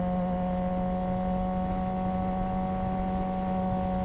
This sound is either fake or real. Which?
real